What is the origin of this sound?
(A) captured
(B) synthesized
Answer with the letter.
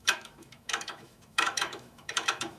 B